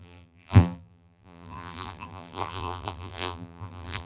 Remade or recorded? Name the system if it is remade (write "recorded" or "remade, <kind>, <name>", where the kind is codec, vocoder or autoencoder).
remade, vocoder, BigVGAN v2